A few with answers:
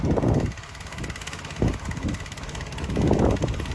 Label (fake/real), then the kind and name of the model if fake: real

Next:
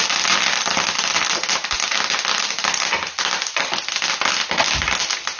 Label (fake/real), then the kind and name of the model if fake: real